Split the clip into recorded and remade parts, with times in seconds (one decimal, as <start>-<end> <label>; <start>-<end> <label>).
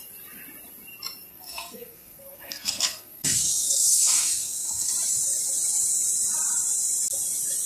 0.0-1.3 recorded; 1.3-4.9 remade; 4.9-7.7 recorded